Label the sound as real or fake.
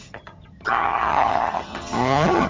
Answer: fake